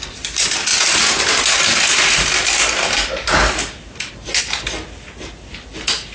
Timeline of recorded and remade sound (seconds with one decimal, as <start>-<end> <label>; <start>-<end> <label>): 0.0-6.1 recorded